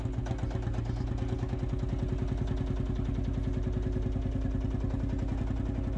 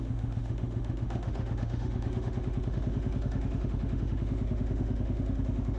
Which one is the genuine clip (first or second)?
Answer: first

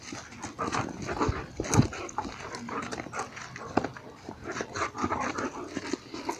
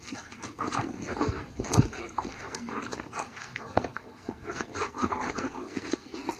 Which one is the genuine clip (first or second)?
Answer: first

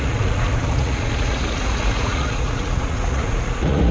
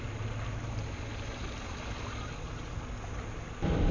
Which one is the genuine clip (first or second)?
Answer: second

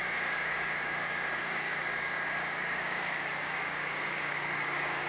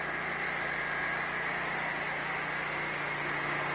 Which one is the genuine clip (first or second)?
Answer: second